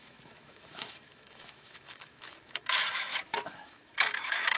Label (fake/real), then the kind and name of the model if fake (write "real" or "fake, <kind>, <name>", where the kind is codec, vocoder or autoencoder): fake, autoencoder, DAC-VAE